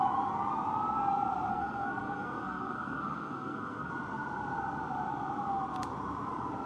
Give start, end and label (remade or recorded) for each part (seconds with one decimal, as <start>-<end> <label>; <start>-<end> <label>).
0.0-1.5 recorded; 1.5-3.9 remade; 3.9-6.7 recorded